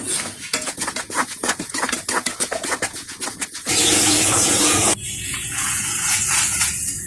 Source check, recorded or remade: remade